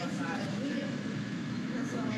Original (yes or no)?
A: no